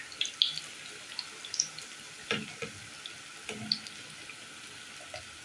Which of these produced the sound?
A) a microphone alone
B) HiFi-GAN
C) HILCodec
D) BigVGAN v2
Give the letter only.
A